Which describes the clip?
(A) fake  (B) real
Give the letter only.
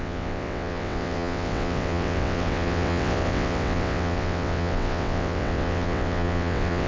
A